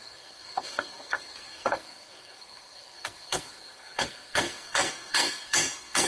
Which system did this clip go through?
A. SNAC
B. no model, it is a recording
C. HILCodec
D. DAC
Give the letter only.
A